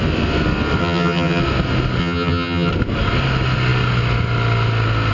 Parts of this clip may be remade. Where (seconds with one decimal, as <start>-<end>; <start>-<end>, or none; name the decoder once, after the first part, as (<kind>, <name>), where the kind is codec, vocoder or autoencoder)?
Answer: 0.8-1.4 (vocoder, HiFi-GAN); 2.0-2.7

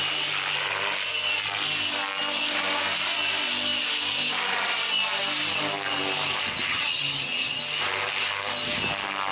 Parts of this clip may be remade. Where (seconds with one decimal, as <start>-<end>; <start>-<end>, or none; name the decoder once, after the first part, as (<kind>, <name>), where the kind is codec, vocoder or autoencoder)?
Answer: 6.7-7.6 (vocoder, HiFi-GAN)

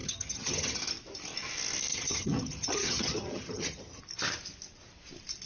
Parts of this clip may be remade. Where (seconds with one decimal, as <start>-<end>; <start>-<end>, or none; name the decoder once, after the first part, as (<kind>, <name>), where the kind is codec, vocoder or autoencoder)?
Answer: 0.0-0.8 (vocoder, HiFi-GAN); 1.9-4.0

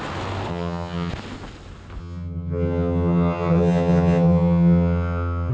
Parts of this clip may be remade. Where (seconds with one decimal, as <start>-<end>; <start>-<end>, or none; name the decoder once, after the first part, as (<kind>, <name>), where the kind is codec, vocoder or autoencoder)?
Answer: 0.5-1.1 (vocoder, HiFi-GAN); 2.0-5.5

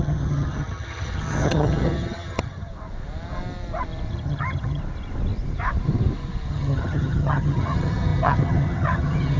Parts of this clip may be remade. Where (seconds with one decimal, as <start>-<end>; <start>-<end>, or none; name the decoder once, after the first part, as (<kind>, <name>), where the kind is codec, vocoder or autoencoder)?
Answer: 0.0-2.7 (vocoder, HiFi-GAN); 4.1-4.8; 6.5-9.4